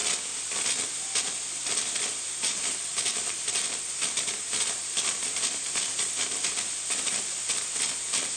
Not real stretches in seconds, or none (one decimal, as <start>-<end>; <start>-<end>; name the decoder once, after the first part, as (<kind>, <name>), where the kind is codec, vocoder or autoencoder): none